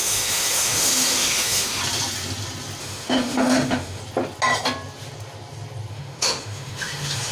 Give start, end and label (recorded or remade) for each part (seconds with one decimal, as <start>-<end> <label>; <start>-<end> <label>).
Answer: 0.0-1.8 remade; 1.8-2.8 recorded; 2.8-4.0 remade; 4.0-5.9 recorded; 5.9-7.3 remade